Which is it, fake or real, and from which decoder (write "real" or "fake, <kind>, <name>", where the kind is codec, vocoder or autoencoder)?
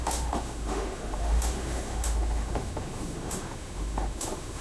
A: fake, autoencoder, DAC-VAE